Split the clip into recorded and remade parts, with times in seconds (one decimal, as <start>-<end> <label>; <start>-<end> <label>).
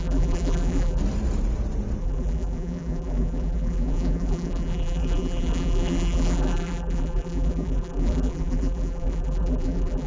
0.0-1.0 remade; 1.0-2.0 recorded; 2.0-10.1 remade